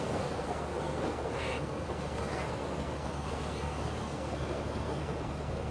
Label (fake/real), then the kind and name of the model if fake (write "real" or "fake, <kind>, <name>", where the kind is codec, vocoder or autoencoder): fake, codec, SNAC